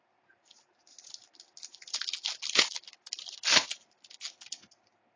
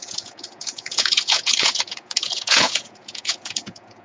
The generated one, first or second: second